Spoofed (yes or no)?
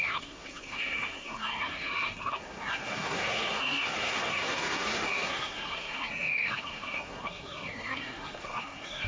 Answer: yes